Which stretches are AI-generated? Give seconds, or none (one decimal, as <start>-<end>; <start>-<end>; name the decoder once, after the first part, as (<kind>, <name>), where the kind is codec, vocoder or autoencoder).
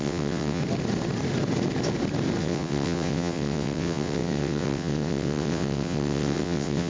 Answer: 0.0-0.6 (vocoder, WaveNeXt); 2.4-6.9